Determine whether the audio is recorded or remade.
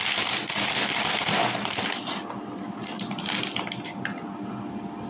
recorded